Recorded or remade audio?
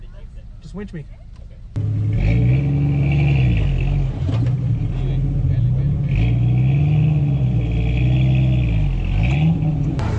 recorded